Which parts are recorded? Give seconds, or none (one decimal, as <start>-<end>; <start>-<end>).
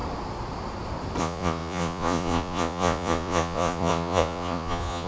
0.0-1.2